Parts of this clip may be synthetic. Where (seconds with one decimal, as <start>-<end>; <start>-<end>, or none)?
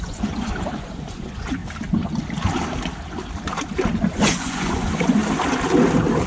0.0-1.6; 4.1-5.2